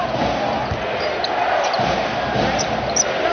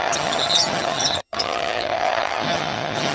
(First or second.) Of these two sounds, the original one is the first